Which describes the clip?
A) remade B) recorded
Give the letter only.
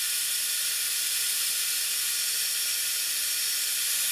B